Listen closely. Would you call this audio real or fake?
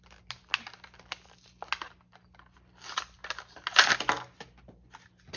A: real